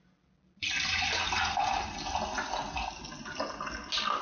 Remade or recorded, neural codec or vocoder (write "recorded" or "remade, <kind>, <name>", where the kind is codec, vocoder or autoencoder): recorded